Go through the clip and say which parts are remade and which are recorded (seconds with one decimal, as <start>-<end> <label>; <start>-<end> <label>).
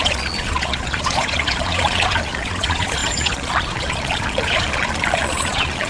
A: 0.0-5.9 remade